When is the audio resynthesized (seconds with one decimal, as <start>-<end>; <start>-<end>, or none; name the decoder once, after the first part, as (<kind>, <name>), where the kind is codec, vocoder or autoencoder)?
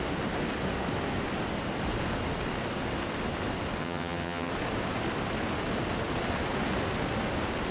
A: 3.8-4.5 (vocoder, HiFi-GAN)